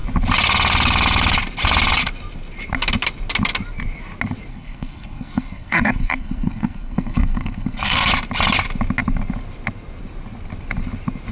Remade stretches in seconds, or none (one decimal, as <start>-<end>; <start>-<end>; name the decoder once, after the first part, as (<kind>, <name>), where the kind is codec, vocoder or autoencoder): 4.5-8.1 (codec, SNAC)